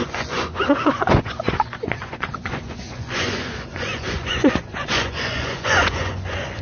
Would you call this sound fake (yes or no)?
yes